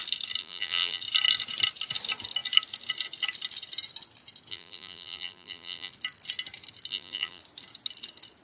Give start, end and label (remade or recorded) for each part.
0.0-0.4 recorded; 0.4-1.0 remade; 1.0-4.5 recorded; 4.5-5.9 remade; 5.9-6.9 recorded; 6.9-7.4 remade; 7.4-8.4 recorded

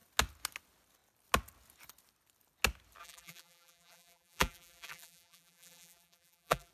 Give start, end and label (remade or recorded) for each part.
0.0-3.0 recorded; 3.0-6.7 remade

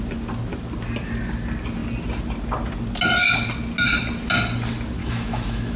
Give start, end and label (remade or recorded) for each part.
0.0-5.0 recorded; 5.0-5.8 remade